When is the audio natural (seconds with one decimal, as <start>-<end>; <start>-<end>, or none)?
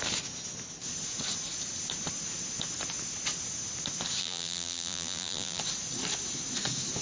0.0-4.2; 5.6-7.0